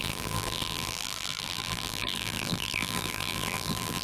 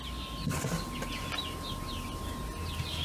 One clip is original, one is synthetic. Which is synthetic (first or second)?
first